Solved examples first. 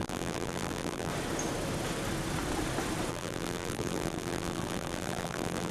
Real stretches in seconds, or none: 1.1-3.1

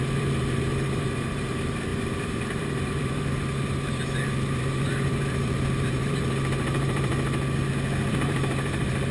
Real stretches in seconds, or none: 7.1-8.1

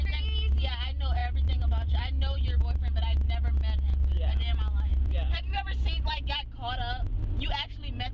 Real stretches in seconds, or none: 0.0-1.2; 2.6-4.9; 5.6-8.1

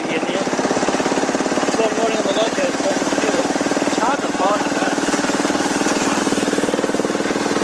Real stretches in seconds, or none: 0.0-1.9; 6.2-7.6

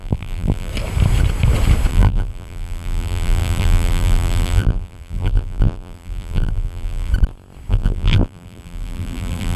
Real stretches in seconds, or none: 0.7-1.9; 7.1-7.7

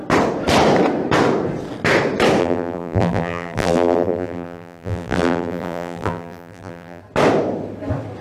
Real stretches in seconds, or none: 0.0-2.4; 7.0-8.2

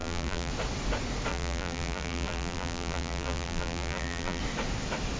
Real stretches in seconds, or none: 0.5-1.3; 4.4-5.2

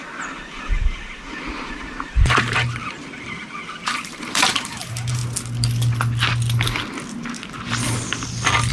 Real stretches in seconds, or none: 0.0-0.6; 5.2-8.7